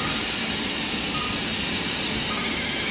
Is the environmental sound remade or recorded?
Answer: recorded